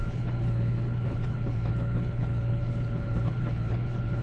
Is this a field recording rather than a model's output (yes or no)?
no